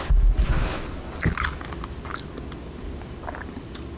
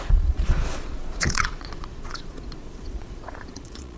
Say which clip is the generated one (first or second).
second